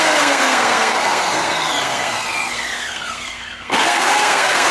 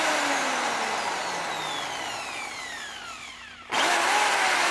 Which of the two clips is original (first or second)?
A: second